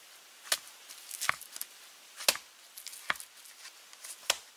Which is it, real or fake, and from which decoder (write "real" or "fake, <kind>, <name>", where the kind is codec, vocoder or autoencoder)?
real